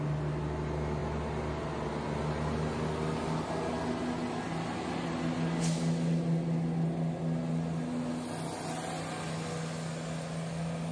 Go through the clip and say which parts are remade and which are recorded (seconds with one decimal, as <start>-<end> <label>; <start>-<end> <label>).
0.0-10.9 recorded